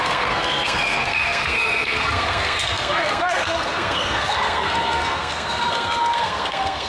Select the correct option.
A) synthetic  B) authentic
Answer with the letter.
A